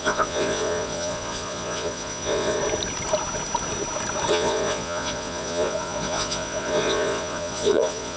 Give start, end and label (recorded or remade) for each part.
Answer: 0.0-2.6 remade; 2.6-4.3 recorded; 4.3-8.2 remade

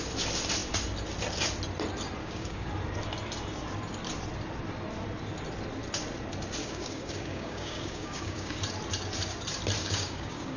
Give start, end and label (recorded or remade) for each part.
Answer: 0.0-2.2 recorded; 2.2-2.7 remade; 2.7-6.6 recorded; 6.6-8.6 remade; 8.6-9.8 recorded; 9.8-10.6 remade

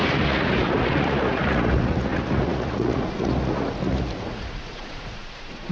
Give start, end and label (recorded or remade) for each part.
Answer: 0.0-5.7 remade

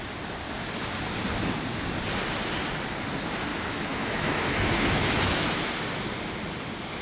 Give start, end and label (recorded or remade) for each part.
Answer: 0.0-3.5 recorded; 3.5-5.7 remade; 5.7-7.0 recorded

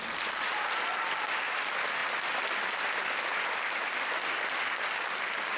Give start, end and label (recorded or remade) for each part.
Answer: 0.0-5.6 recorded

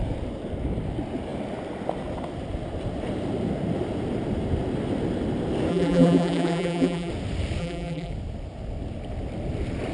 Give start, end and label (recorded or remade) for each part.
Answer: 0.0-5.7 recorded; 5.7-7.1 remade; 7.1-7.6 recorded; 7.6-8.1 remade; 8.1-9.9 recorded

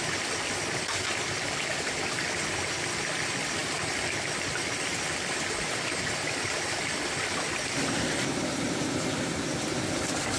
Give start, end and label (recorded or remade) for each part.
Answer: 0.0-10.4 recorded